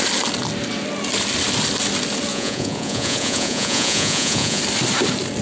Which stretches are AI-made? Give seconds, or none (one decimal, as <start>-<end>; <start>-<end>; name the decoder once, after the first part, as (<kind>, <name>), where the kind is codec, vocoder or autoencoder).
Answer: 2.3-4.6 (vocoder, Vocos)